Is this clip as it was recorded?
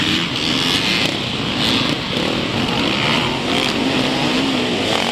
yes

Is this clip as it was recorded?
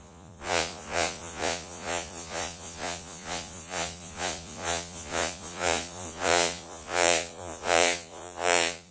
no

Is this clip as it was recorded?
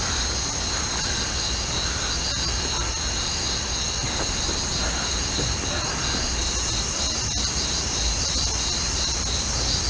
yes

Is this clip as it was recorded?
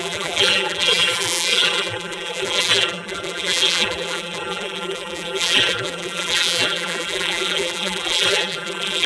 no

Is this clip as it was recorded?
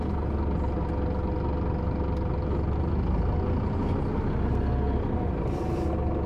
yes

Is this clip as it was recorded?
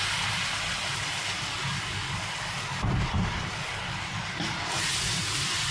no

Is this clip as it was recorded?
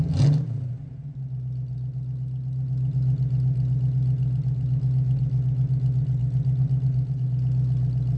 yes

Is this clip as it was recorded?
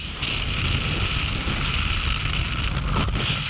yes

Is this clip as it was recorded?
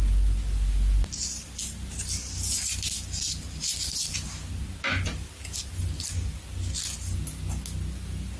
yes